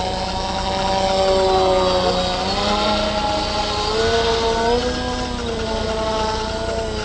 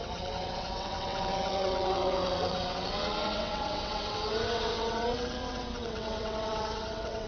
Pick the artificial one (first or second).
second